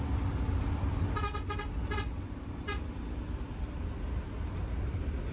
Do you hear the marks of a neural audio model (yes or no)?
no